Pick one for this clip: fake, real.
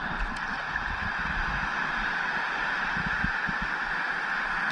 real